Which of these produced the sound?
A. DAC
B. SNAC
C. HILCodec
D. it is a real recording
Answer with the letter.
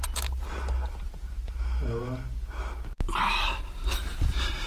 D